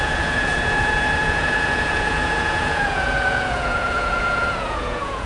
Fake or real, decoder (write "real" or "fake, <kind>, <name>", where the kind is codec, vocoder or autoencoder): fake, vocoder, Vocos